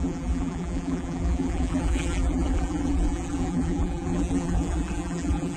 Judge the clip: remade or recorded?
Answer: remade